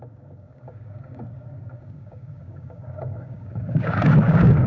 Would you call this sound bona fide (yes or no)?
no